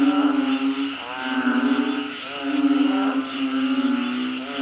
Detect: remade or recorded recorded